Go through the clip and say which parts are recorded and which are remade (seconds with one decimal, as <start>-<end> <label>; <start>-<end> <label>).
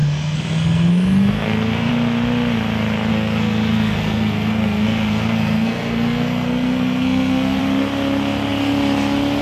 0.0-1.9 remade; 1.9-3.1 recorded; 3.1-7.6 remade; 7.6-9.4 recorded